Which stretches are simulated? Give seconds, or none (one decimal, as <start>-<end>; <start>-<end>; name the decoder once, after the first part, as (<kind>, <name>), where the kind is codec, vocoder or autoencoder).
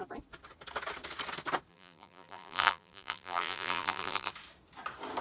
1.7-4.3 (vocoder, BigVGAN v2)